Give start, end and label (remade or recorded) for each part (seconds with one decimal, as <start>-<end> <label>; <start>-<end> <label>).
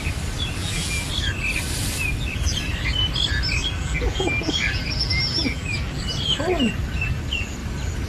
0.0-0.6 recorded; 0.6-1.1 remade; 1.1-3.6 recorded; 3.6-6.0 remade; 6.0-8.1 recorded